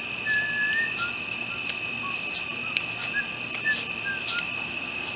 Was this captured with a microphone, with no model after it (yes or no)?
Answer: yes